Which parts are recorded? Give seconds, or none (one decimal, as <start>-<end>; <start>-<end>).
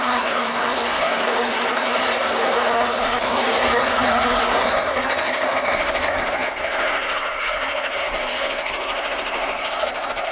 none